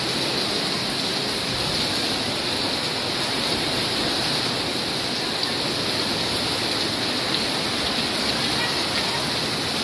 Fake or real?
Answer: real